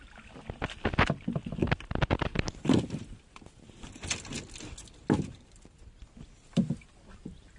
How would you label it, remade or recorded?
recorded